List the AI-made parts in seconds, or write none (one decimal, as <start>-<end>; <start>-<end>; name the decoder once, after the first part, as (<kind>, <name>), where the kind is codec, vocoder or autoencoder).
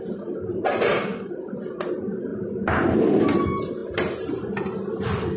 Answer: 0.9-1.9 (vocoder, BigVGAN v2)